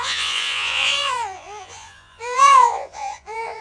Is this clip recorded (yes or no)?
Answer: no